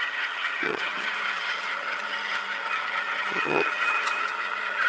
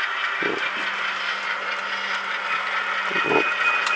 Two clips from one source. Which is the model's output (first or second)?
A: first